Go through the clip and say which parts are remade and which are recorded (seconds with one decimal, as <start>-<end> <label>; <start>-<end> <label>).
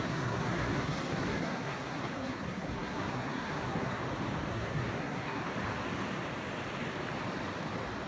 0.0-4.0 remade; 4.0-4.5 recorded; 4.5-5.4 remade; 5.4-8.1 recorded